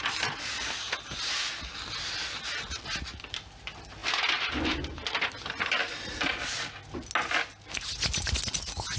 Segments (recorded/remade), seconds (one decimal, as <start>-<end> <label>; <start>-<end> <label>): 0.0-9.0 recorded